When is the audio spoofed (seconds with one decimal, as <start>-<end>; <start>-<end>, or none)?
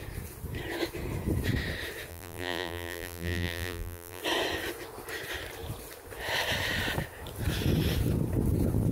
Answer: 2.1-4.2